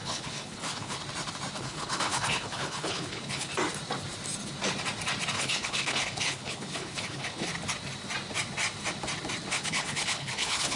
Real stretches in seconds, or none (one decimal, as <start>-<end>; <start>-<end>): 1.0-1.6; 3.5-5.3; 7.5-9.5